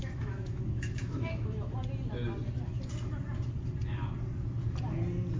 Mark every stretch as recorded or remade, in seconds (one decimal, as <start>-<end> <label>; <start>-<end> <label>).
0.0-1.7 remade; 1.7-5.4 recorded